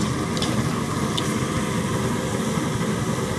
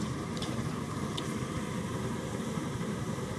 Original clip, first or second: first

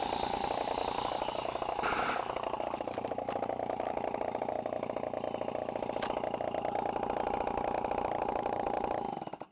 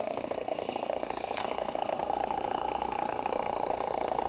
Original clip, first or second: first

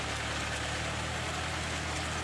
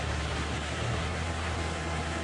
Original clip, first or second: first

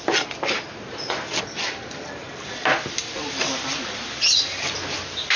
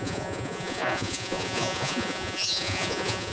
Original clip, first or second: first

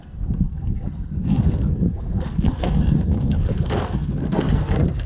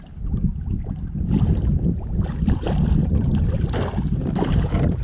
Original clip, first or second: second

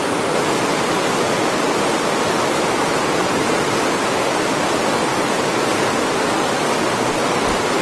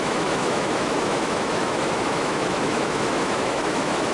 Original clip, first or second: first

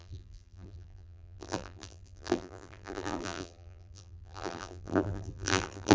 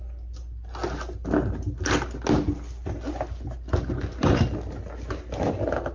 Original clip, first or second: second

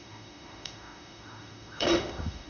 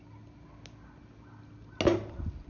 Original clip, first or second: second